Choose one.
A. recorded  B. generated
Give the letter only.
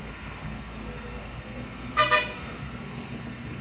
B